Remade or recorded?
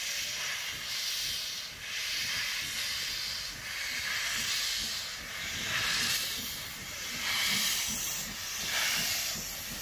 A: recorded